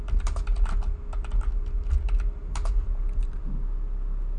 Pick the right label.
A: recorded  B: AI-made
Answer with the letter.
A